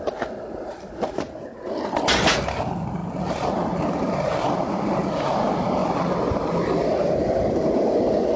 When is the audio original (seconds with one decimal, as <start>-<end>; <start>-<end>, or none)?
0.0-8.4